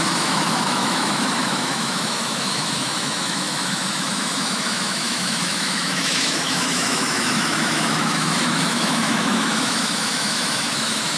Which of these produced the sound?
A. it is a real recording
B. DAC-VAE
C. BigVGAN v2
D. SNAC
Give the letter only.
B